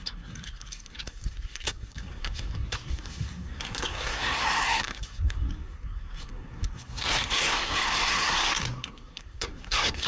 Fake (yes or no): yes